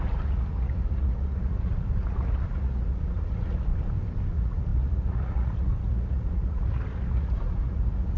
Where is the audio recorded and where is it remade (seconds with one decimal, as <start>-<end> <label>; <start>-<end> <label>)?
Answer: 0.0-3.7 remade; 3.7-4.3 recorded; 4.3-8.2 remade